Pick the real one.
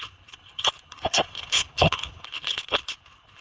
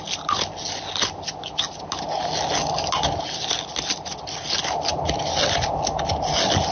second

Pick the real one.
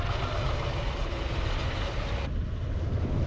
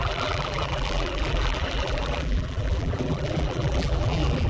first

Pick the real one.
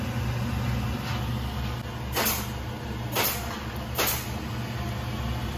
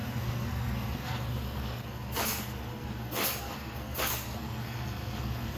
first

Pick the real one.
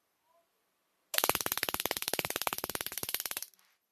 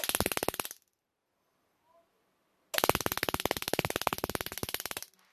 second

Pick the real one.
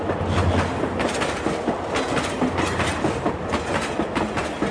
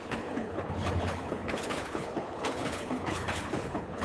first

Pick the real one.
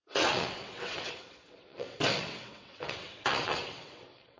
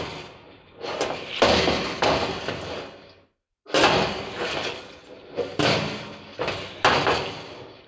second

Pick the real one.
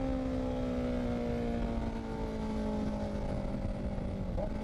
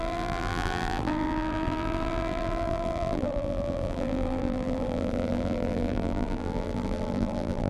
first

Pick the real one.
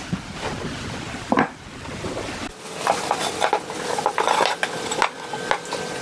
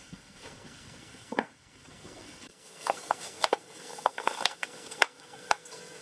first